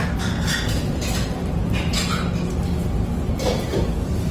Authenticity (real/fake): real